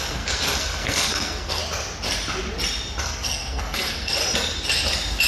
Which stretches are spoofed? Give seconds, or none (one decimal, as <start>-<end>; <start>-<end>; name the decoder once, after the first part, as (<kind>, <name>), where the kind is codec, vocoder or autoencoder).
0.0-1.6 (codec, SNAC); 3.0-4.2